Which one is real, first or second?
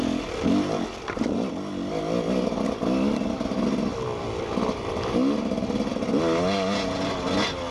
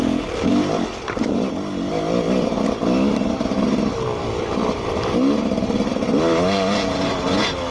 first